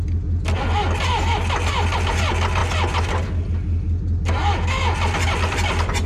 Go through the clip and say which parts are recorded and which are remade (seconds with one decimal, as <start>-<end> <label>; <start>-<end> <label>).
0.0-6.1 recorded